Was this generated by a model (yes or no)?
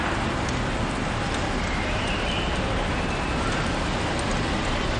no